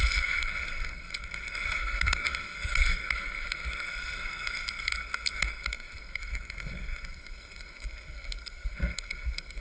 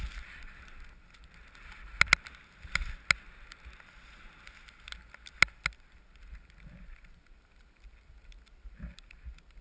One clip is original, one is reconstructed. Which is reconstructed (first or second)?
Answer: first